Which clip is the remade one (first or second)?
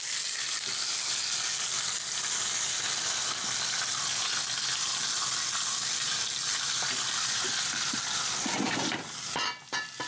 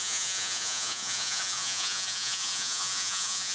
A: second